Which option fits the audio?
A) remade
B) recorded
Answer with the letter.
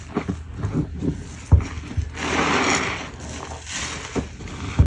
B